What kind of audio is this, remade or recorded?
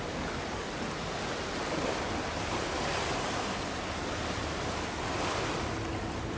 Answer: recorded